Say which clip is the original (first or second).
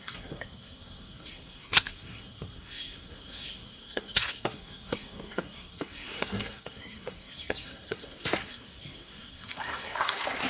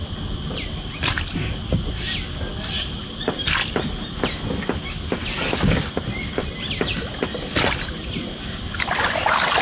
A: second